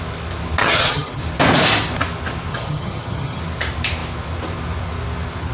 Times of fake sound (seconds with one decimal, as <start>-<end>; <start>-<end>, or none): 0.6-1.2; 2.5-3.4